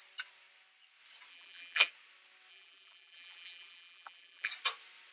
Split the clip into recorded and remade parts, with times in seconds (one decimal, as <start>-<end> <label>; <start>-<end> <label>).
0.0-1.3 recorded; 1.3-1.9 remade; 1.9-2.5 recorded; 2.5-4.5 remade; 4.5-5.1 recorded